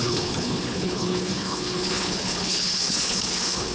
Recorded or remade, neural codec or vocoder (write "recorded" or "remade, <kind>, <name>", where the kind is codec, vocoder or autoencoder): remade, codec, HILCodec